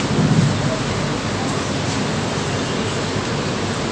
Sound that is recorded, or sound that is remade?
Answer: recorded